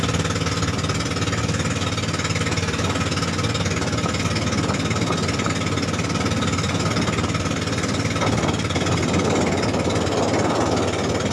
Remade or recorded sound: recorded